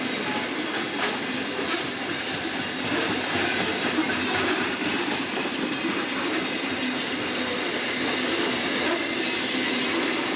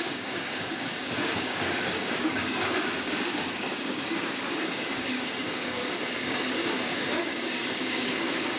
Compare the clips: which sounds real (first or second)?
first